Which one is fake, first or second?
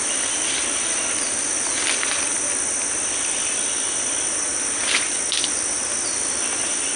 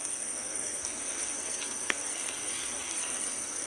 second